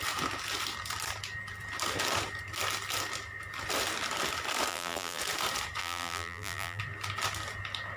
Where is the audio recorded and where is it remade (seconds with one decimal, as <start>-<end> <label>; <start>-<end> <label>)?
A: 0.0-4.7 recorded; 4.7-5.2 remade; 5.2-5.8 recorded; 5.8-6.8 remade; 6.8-8.0 recorded